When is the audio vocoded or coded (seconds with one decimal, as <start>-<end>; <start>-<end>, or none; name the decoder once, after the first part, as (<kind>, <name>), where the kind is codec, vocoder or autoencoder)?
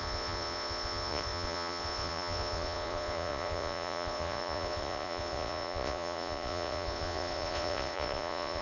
0.0-8.6 (vocoder, Vocos)